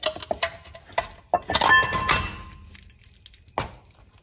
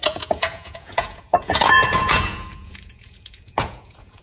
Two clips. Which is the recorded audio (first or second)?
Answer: first